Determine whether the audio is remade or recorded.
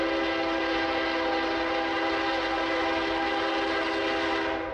recorded